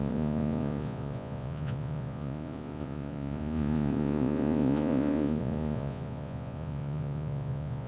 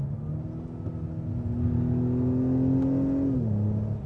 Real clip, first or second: second